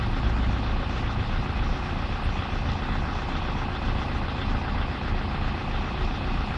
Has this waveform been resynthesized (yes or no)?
no